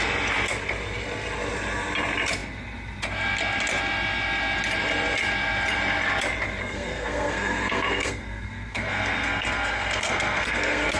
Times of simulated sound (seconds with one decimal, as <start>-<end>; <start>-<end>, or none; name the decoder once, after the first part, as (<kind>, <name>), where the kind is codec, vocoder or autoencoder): 6.6-11.0 (codec, SNAC)